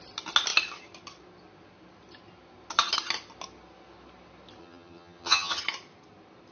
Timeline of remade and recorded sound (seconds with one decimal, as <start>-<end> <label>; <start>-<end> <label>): 0.0-4.6 recorded; 4.6-5.6 remade; 5.6-6.5 recorded